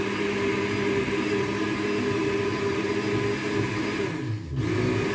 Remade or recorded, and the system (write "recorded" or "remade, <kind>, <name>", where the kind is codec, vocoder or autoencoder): recorded